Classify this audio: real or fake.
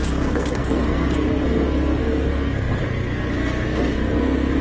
fake